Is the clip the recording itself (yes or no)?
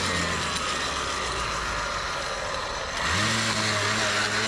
yes